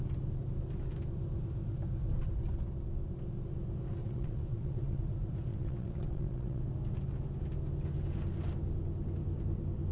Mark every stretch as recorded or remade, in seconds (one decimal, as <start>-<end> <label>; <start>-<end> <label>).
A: 0.0-4.0 recorded; 4.0-5.0 remade; 5.0-5.5 recorded; 5.5-6.6 remade; 6.6-9.9 recorded

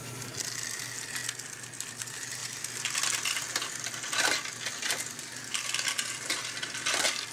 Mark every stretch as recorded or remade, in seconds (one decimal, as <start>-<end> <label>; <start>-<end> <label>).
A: 0.0-7.3 recorded

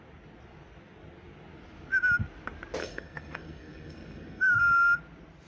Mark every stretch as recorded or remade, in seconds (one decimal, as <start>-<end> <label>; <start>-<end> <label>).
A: 0.0-2.8 recorded; 2.8-4.6 remade; 4.6-5.5 recorded

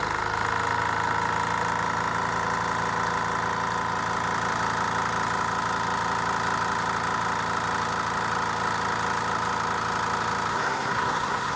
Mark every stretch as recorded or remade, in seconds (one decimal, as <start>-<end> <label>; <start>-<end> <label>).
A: 0.0-10.5 recorded; 10.5-11.6 remade

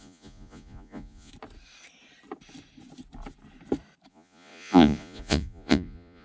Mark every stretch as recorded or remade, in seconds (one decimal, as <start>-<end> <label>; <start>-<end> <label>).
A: 0.0-1.3 remade; 1.3-4.1 recorded; 4.1-6.2 remade